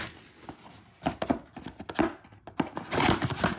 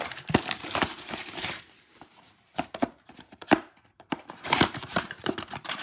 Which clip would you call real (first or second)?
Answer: first